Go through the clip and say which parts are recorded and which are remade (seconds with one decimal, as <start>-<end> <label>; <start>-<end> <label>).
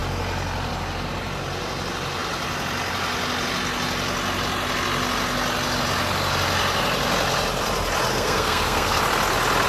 0.0-8.1 recorded; 8.1-9.0 remade; 9.0-9.7 recorded